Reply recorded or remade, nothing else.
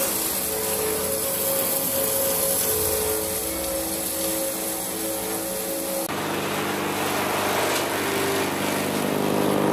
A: recorded